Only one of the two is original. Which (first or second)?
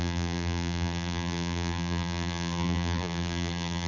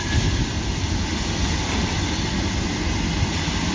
second